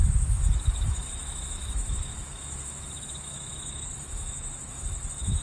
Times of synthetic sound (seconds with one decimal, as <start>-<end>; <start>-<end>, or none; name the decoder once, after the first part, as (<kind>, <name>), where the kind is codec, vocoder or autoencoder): 0.0-5.4 (autoencoder, DAC-VAE)

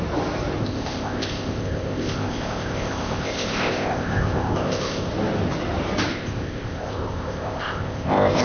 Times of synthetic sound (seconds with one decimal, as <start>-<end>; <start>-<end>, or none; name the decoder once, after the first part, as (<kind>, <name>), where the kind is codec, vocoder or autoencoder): 0.6-5.1 (codec, ZipCodec); 6.1-8.4

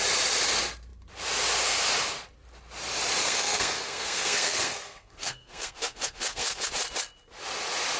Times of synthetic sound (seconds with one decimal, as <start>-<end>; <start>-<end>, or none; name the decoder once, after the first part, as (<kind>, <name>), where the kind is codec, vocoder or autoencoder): 3.2-6.7 (codec, SNAC)

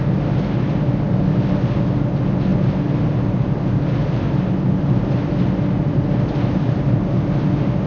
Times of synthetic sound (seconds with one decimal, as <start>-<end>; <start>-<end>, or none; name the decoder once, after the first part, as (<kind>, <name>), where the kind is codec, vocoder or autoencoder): none